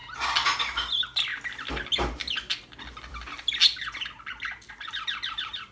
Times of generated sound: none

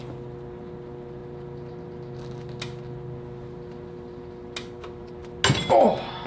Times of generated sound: none